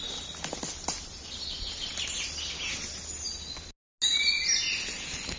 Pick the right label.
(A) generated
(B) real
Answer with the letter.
B